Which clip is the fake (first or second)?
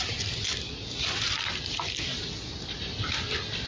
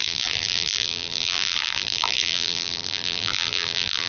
second